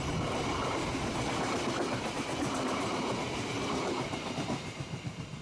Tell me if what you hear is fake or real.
real